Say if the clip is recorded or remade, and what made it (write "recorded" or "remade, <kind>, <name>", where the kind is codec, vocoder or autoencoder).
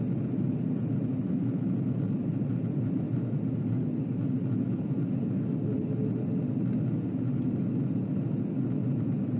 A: recorded